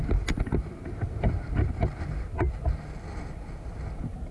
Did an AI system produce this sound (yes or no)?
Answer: no